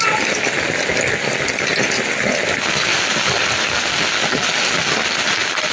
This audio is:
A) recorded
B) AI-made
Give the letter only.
A